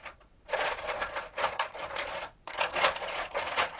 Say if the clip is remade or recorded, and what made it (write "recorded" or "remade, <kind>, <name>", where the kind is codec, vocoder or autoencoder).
remade, vocoder, Vocos